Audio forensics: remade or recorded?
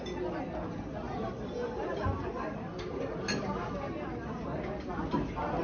recorded